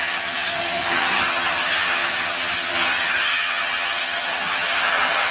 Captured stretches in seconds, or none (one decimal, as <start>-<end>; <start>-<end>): none